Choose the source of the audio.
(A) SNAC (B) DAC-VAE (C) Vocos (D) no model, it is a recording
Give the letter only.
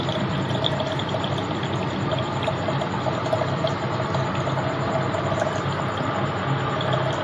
D